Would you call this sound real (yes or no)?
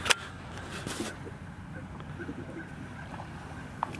yes